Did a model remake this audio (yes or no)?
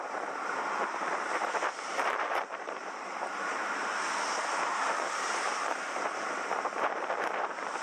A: yes